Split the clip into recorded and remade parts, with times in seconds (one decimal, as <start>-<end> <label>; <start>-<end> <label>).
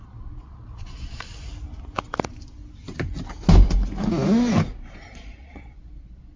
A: 0.0-1.3 remade; 1.3-5.1 recorded; 5.1-6.4 remade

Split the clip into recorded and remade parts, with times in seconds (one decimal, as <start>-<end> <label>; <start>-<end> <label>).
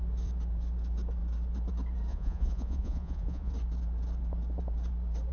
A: 0.0-2.1 recorded; 2.1-3.5 remade; 3.5-5.3 recorded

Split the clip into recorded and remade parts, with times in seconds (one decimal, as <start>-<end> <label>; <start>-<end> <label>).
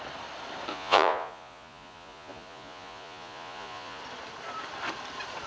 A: 0.0-0.7 recorded; 0.7-4.0 remade; 4.0-5.5 recorded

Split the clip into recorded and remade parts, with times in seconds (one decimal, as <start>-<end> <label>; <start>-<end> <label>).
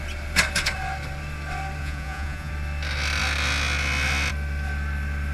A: 0.0-1.8 recorded; 1.8-2.5 remade; 2.5-5.3 recorded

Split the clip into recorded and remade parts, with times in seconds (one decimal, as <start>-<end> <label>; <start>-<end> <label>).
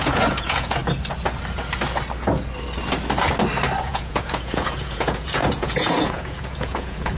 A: 0.0-0.8 remade; 0.8-3.8 recorded; 3.8-7.2 remade